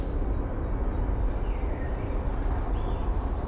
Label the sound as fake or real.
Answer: real